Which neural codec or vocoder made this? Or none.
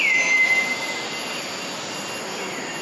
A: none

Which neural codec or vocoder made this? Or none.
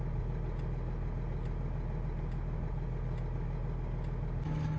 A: none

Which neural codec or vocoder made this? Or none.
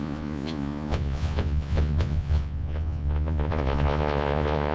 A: vocoder, Vocos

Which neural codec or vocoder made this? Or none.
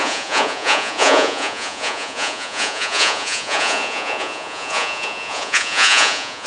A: vocoder, Vocos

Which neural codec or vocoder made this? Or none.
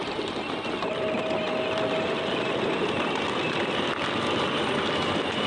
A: none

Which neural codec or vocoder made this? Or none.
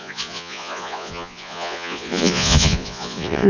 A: vocoder, Vocos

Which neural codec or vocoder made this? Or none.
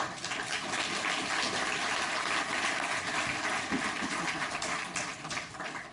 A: none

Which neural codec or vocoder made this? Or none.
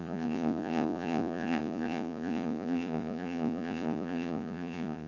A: vocoder, Vocos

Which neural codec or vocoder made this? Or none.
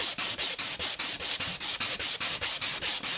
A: none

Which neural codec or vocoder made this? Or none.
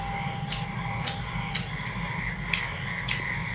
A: none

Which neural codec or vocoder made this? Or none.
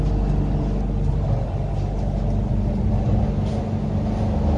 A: none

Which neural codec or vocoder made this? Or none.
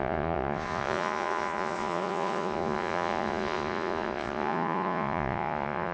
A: vocoder, Vocos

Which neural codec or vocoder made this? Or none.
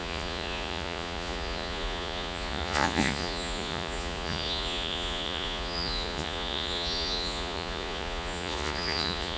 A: vocoder, Vocos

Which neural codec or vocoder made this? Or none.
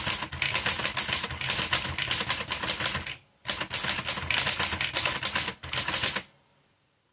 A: none